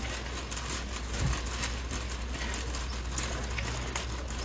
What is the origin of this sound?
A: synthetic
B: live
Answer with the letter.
B